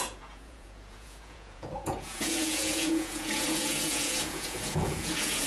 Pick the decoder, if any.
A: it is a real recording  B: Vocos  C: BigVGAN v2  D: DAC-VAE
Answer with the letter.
B